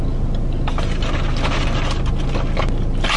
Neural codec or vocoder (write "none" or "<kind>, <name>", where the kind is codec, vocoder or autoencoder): none